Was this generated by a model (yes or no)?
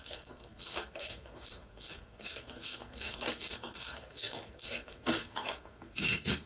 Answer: yes